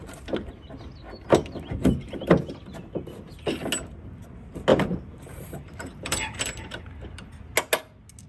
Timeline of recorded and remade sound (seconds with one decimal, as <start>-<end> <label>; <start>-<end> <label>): 0.0-4.7 recorded; 4.7-6.8 remade; 6.8-8.3 recorded